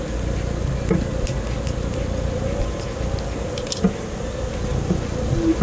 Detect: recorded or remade recorded